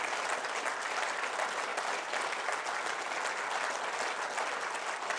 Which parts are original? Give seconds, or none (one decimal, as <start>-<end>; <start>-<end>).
0.0-5.2